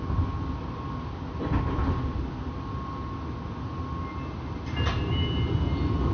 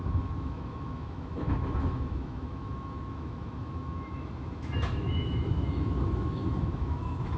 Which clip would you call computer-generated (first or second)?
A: second